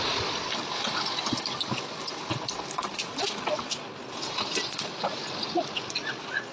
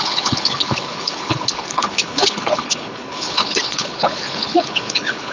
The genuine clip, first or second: first